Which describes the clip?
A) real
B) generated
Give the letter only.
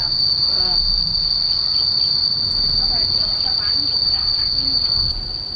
A